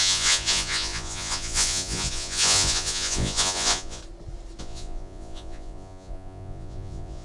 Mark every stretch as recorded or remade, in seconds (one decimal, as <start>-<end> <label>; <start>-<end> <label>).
0.0-4.0 remade; 4.0-4.6 recorded; 4.6-7.2 remade